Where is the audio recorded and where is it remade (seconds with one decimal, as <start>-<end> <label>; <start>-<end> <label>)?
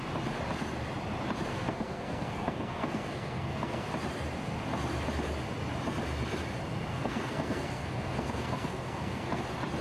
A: 0.0-1.5 recorded; 1.5-3.9 remade; 3.9-6.9 recorded; 6.9-9.4 remade; 9.4-9.8 recorded